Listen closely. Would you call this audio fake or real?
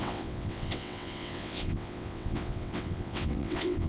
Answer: fake